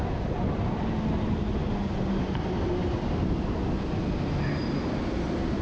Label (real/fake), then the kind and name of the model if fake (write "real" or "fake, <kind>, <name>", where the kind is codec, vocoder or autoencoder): real